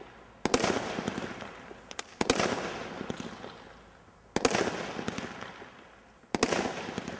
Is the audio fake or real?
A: real